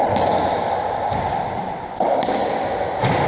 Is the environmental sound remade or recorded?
recorded